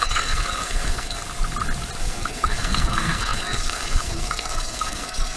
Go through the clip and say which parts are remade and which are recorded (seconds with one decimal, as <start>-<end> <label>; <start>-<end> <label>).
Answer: 0.0-1.2 remade; 1.2-2.0 recorded; 2.0-5.4 remade